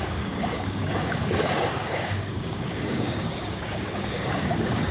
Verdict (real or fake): fake